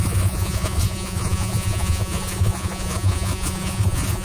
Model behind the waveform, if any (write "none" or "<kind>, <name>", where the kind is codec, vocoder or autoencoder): vocoder, Vocos